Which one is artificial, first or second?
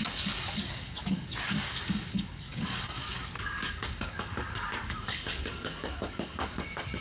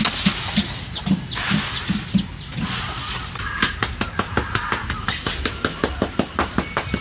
first